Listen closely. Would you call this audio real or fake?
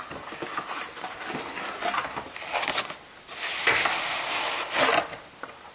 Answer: real